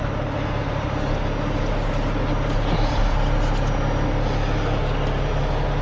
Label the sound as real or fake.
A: real